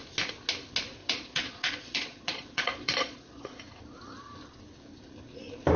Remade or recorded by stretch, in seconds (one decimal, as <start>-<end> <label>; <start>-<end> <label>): 0.0-1.0 recorded; 1.0-3.6 remade; 3.6-5.8 recorded